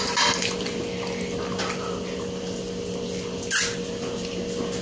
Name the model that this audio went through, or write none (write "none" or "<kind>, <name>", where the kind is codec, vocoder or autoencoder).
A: none